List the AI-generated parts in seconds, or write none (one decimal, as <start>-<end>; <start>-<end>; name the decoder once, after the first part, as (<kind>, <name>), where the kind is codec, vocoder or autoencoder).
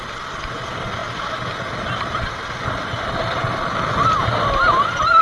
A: none